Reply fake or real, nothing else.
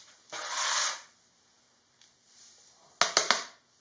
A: real